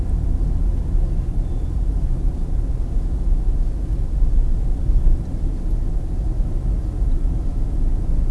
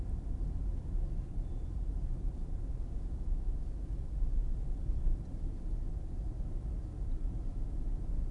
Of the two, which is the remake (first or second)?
second